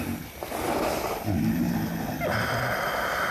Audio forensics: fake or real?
real